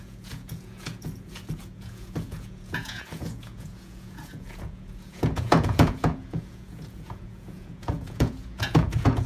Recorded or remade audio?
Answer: remade